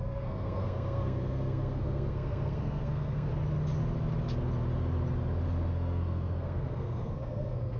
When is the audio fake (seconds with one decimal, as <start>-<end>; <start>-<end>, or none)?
0.0-3.3; 5.7-7.8